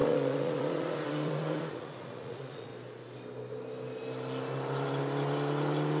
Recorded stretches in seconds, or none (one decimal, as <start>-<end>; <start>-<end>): 2.7-6.0